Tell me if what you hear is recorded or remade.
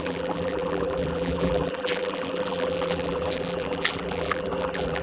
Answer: remade